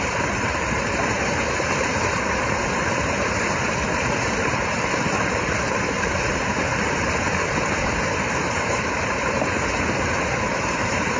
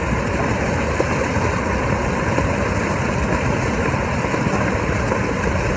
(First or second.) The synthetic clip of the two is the first